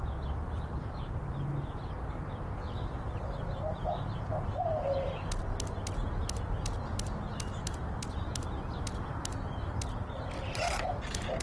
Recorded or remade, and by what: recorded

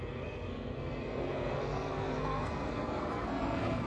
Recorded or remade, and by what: remade, codec, SNAC